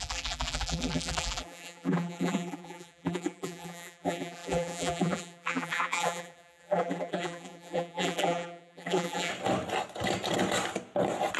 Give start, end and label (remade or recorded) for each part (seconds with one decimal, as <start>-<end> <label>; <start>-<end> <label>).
0.0-9.3 remade; 9.3-11.4 recorded